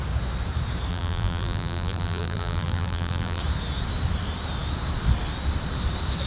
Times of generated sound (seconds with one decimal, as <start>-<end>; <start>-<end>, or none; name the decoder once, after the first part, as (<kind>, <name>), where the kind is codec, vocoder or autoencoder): 0.9-3.4 (vocoder, BigVGAN v2)